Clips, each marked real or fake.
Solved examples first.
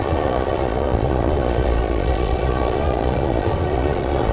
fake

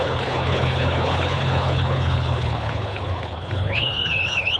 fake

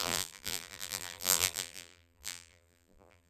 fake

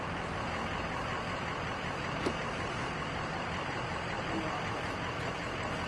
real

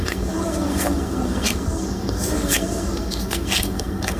fake